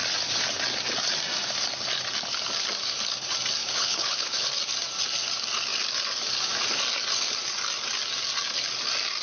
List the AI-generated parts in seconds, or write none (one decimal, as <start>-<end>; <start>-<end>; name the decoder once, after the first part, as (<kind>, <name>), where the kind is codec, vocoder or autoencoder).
3.6-4.5 (codec, HILCodec)